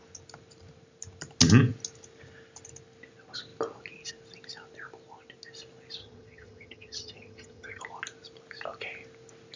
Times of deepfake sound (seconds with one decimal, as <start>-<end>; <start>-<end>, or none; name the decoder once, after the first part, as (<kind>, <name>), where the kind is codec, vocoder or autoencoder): 6.0-7.8 (vocoder, HiFi-GAN)